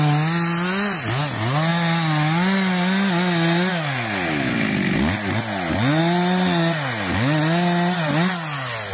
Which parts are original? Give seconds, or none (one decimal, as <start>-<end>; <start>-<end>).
0.0-8.9